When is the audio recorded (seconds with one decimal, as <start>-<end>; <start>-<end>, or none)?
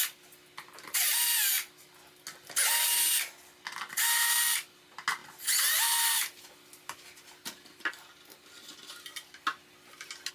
0.0-10.3